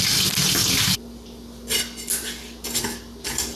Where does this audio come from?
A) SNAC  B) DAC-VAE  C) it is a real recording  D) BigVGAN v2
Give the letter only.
C